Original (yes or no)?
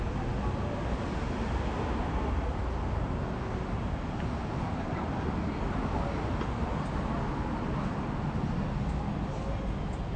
yes